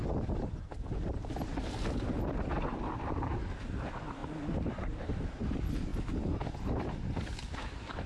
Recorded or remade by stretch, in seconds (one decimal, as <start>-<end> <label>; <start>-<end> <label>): 0.0-8.1 recorded